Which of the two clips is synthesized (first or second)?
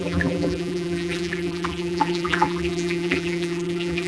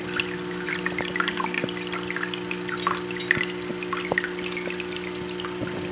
first